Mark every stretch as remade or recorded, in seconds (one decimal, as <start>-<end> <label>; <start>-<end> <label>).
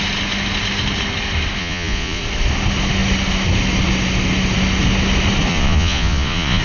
0.0-1.6 recorded; 1.6-2.2 remade; 2.2-5.5 recorded; 5.5-6.6 remade